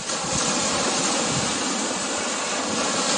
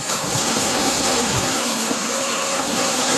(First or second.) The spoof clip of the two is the second